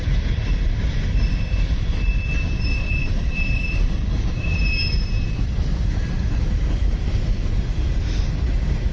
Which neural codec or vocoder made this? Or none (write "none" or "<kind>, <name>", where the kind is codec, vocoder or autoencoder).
vocoder, BigVGAN v2